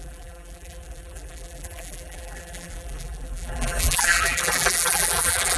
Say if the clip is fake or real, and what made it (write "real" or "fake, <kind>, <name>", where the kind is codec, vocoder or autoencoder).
fake, vocoder, BigVGAN v2